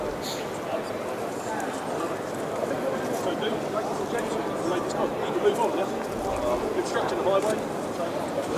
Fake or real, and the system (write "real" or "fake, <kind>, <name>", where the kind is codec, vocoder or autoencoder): real